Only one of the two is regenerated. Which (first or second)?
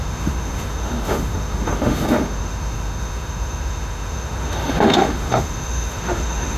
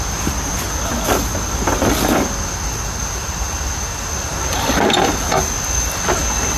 first